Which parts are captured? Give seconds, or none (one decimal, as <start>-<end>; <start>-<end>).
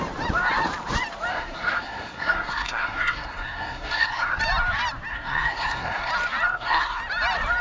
0.0-1.3; 4.4-5.1; 6.1-6.5; 7.0-7.6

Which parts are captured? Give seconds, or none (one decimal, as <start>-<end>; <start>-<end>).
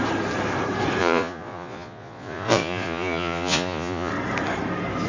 0.0-1.0; 4.1-5.1